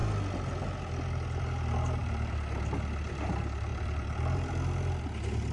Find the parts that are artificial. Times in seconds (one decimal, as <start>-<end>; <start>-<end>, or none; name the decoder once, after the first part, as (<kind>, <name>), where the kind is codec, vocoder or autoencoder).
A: 2.0-2.6 (vocoder, BigVGAN v2); 3.7-5.0